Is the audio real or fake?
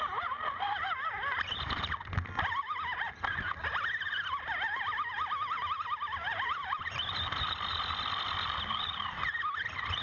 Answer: real